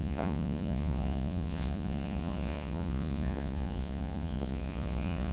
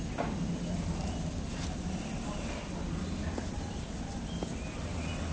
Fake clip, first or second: first